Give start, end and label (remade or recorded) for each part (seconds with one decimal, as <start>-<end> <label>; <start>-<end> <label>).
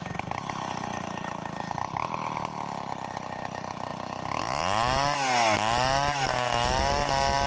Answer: 0.0-7.5 recorded